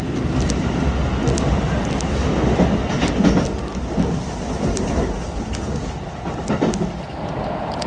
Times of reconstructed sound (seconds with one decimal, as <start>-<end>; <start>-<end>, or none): none